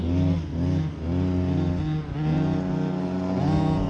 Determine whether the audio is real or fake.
real